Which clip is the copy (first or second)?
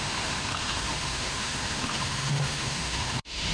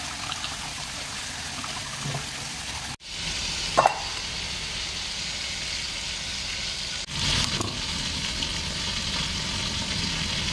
first